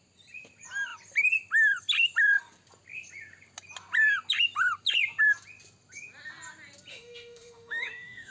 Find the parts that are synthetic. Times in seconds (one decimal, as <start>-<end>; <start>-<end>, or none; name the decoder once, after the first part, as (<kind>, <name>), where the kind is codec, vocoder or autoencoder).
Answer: 6.9-8.3 (autoencoder, DAC-VAE)